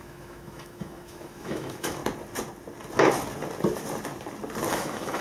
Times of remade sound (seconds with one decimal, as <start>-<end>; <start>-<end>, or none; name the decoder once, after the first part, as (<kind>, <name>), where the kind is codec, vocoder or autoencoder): 0.0-2.0 (autoencoder, DAC-VAE); 4.7-5.2